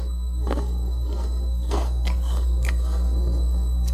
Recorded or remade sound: remade